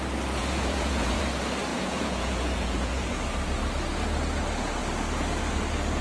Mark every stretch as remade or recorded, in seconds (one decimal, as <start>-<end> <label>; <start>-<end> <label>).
0.0-0.4 recorded; 0.4-1.2 remade; 1.2-1.7 recorded; 1.7-3.1 remade; 3.1-6.0 recorded